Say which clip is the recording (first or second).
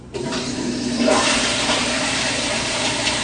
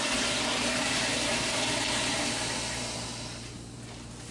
second